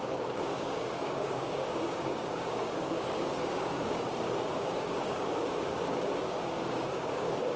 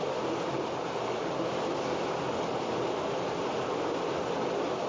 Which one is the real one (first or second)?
second